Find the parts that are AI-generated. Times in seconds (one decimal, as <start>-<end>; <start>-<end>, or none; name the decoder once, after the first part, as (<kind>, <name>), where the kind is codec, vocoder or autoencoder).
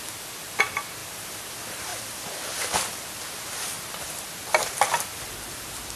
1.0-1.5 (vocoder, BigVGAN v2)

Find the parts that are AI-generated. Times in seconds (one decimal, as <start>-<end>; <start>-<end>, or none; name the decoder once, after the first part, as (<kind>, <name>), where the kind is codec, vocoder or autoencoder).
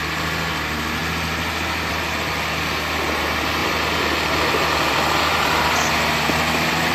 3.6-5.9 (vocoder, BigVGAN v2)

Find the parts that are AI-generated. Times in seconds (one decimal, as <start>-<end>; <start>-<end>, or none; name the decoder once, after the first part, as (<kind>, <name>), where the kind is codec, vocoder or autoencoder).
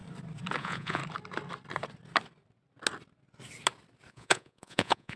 0.6-1.0 (vocoder, Vocos); 4.1-5.2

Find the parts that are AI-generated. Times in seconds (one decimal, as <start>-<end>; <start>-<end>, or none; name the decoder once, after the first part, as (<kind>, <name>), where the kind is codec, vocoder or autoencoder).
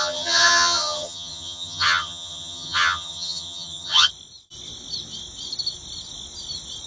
0.0-4.1 (vocoder, HiFi-GAN)